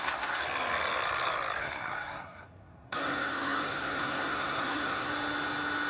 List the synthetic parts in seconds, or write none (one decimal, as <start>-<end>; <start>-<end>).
0.0-0.4; 1.6-5.1